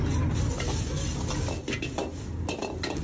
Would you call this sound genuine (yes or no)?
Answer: yes